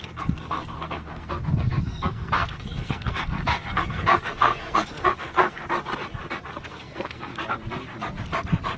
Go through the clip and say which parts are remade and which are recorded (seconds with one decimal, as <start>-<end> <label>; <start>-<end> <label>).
0.0-5.6 remade; 5.6-6.7 recorded; 6.7-7.3 remade; 7.3-8.8 recorded